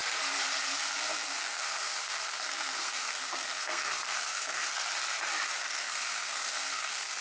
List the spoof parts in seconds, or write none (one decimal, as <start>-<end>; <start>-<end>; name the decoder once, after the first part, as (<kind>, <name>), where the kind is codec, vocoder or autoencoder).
0.7-4.8 (codec, SNAC); 5.6-7.2